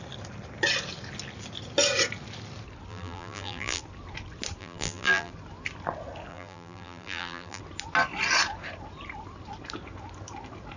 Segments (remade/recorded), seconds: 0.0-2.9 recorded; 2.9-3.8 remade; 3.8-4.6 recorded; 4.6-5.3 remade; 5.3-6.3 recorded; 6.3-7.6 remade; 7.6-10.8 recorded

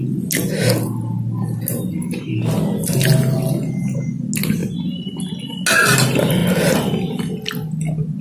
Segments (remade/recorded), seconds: 0.0-8.2 recorded

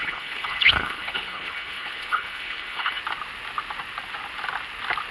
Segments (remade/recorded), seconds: 0.0-3.0 remade; 3.0-5.1 recorded

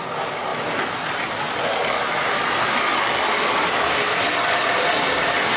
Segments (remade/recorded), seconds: 0.0-5.6 recorded